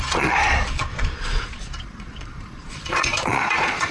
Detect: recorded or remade remade